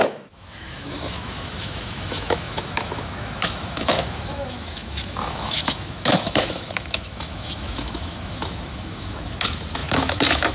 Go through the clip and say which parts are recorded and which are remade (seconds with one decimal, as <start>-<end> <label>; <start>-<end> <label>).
0.0-10.5 remade

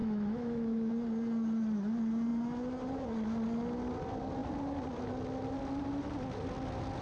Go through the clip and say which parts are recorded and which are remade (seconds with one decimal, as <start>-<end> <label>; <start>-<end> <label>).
0.0-0.9 remade; 0.9-7.0 recorded

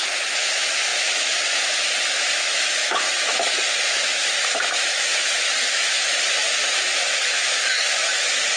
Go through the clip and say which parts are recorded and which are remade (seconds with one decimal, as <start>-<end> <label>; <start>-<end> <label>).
0.0-8.6 remade

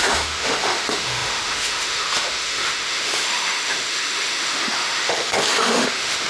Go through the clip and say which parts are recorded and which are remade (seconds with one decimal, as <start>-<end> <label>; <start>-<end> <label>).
0.0-6.3 remade